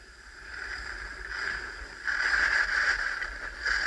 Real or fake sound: real